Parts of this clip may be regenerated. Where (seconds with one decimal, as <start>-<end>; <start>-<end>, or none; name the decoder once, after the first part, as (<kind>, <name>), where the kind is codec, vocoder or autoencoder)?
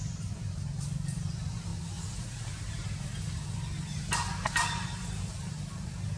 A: none